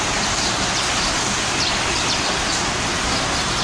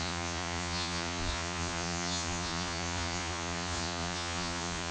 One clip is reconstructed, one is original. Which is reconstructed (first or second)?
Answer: second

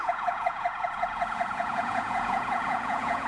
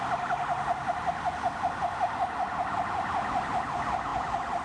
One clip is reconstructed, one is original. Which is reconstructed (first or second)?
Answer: first